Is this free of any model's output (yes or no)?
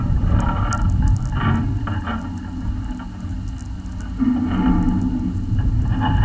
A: yes